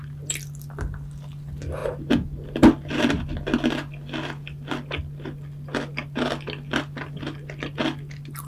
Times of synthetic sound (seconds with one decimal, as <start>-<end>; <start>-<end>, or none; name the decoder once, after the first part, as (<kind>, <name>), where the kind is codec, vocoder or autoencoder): none